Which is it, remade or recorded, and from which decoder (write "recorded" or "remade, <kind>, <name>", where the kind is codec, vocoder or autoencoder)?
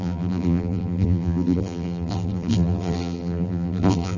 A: remade, vocoder, BigVGAN v2